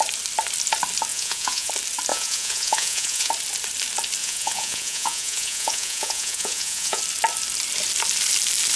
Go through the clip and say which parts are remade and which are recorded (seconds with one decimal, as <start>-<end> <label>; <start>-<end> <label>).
0.0-1.1 recorded; 1.1-1.7 remade; 1.7-2.1 recorded; 2.1-3.3 remade; 3.3-4.2 recorded; 4.2-7.0 remade; 7.0-8.8 recorded